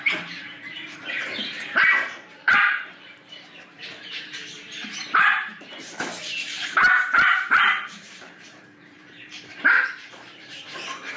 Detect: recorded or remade remade